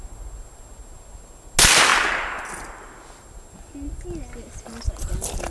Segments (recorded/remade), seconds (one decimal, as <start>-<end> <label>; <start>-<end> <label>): 0.0-5.5 recorded